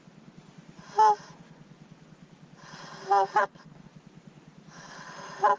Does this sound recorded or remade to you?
recorded